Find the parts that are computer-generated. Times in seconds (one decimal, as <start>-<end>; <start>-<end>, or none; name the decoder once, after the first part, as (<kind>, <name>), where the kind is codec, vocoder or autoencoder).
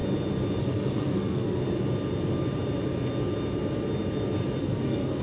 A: 0.6-1.6 (codec, SNAC); 4.6-5.2